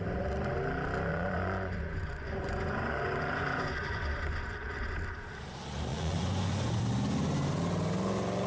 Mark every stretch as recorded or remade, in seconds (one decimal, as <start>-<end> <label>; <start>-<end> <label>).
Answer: 0.0-1.1 recorded; 1.1-5.0 remade; 5.0-5.9 recorded; 5.9-6.8 remade; 6.8-8.5 recorded